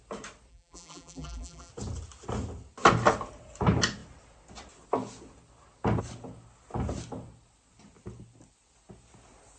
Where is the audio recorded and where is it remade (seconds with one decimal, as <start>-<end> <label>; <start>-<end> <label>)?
0.0-0.5 recorded; 0.5-1.7 remade; 1.7-9.6 recorded